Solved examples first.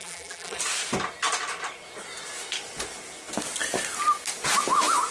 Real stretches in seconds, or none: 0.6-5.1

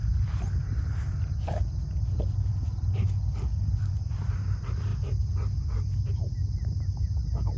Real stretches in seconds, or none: 0.0-7.6

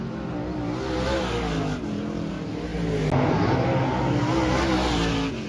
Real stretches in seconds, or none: 0.0-5.5